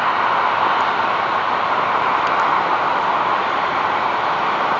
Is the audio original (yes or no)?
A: yes